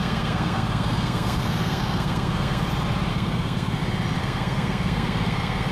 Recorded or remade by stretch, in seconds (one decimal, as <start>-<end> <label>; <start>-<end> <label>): 0.0-2.7 remade; 2.7-3.1 recorded; 3.1-3.8 remade; 3.8-4.2 recorded; 4.2-5.7 remade